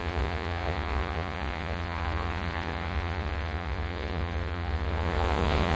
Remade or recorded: remade